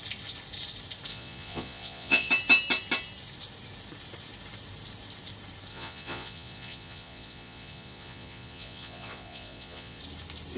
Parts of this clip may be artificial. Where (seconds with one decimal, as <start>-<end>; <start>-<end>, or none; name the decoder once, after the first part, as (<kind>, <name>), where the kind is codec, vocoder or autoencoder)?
1.1-2.3 (vocoder, Vocos); 5.7-10.0